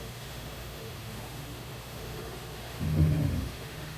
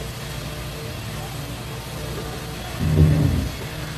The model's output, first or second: first